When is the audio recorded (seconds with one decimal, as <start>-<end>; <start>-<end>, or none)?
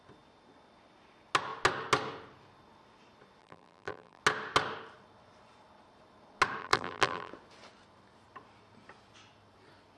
0.0-3.4; 4.2-6.6; 7.3-10.0